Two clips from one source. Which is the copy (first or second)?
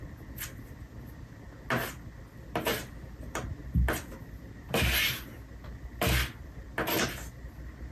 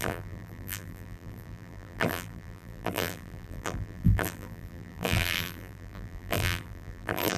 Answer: second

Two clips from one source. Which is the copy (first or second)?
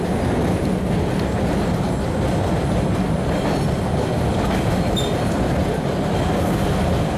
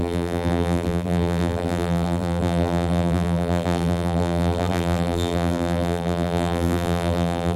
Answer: second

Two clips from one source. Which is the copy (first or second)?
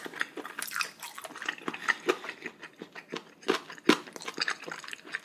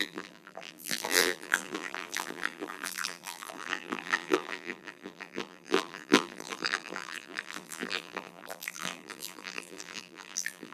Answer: second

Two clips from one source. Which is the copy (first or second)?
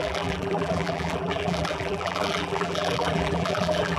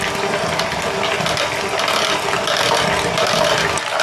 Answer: first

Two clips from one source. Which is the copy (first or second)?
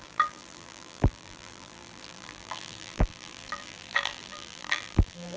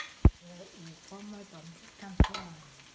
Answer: first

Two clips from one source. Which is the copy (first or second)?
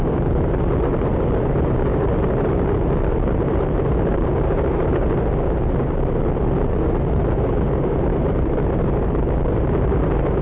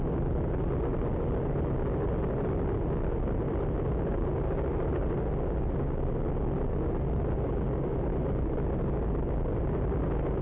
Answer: first